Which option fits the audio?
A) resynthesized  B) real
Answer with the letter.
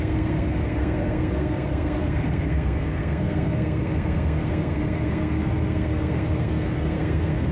A